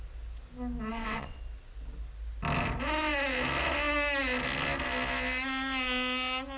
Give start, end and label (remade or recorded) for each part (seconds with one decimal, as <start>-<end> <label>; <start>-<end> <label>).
0.0-0.9 recorded; 0.9-1.4 remade; 1.4-6.6 recorded